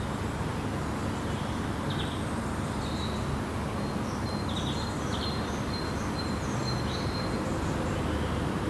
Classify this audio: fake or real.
real